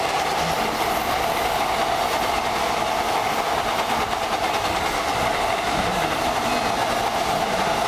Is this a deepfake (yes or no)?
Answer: no